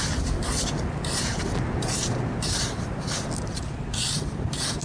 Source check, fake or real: real